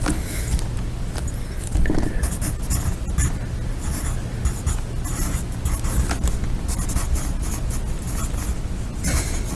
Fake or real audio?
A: real